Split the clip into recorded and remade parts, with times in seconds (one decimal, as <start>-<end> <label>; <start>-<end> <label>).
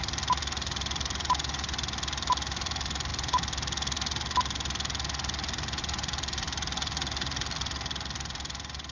0.0-8.9 recorded